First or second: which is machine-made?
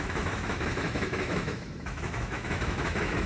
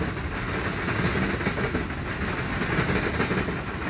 first